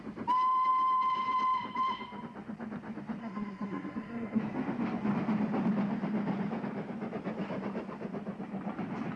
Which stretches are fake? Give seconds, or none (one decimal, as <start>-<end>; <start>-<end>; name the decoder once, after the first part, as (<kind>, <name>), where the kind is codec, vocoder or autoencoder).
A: 3.2-4.4 (codec, SNAC)